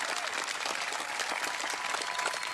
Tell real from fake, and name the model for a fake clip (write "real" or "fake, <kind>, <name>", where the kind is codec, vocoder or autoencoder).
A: real